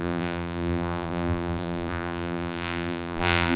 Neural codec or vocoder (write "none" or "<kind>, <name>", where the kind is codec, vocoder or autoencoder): vocoder, BigVGAN v2